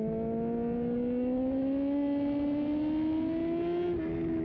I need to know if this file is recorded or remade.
recorded